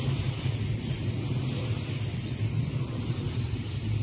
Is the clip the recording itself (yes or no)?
yes